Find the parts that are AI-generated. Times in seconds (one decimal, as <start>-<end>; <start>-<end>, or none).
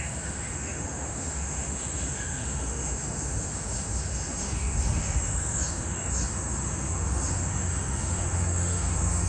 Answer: 0.0-9.3